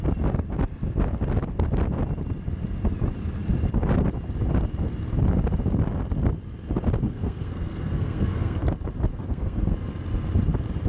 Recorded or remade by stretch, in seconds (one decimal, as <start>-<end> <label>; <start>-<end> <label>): 0.0-7.0 recorded; 7.0-8.7 remade; 8.7-9.1 recorded; 9.1-9.7 remade; 9.7-10.9 recorded